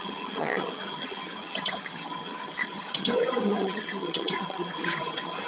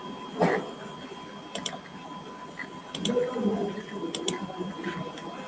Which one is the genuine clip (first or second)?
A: second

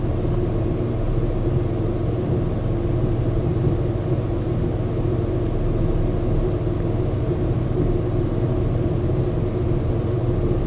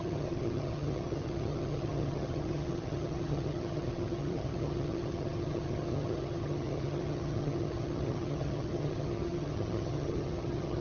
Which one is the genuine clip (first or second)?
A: first